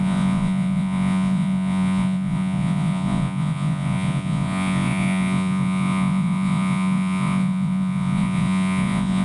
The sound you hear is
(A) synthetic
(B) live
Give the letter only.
A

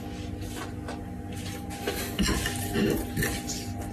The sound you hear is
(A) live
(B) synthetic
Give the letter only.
A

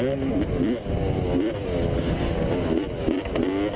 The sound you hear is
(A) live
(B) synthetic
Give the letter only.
A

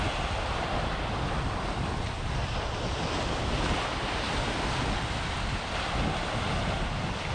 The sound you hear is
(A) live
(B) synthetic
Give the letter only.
A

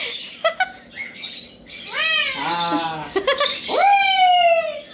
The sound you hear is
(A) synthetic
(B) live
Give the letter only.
B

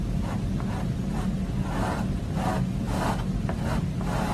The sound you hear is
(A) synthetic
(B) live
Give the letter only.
B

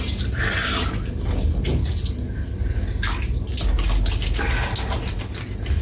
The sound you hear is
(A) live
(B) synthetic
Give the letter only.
A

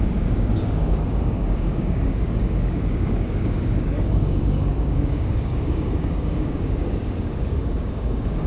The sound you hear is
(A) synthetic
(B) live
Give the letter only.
A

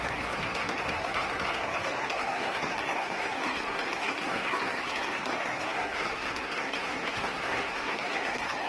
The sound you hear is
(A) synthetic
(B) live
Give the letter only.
A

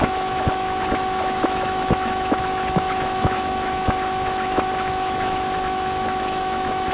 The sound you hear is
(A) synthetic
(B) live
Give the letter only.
A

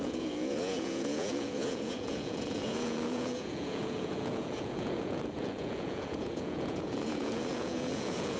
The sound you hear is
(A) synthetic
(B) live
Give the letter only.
A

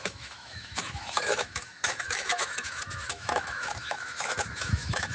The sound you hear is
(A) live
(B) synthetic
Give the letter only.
B